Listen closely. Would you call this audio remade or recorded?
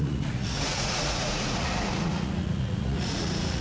remade